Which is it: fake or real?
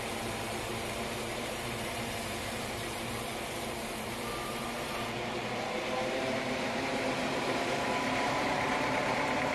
fake